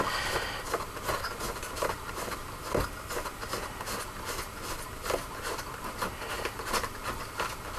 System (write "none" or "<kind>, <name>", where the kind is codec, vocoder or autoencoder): none